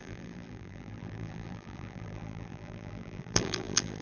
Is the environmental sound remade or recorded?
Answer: remade